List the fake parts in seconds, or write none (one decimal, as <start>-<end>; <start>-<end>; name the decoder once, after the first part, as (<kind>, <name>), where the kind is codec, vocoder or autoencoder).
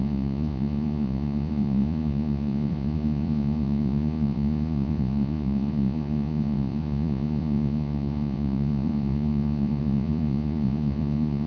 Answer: 0.0-11.5 (vocoder, Vocos)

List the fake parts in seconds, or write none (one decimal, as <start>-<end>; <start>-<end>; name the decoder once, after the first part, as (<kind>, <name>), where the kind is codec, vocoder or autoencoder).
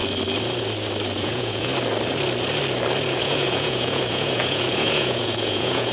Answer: 1.2-1.7 (vocoder, Vocos); 3.2-5.9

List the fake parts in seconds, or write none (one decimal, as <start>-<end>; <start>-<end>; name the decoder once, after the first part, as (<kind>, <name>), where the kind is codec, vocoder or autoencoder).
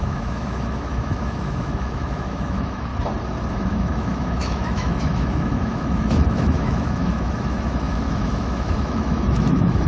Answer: 0.0-2.9 (autoencoder, DAC-VAE); 3.5-9.9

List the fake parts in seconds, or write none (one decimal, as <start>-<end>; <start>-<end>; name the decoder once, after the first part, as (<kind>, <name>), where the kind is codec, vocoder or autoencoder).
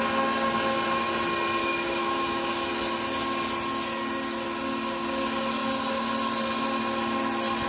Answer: 1.6-2.7 (autoencoder, DAC-VAE)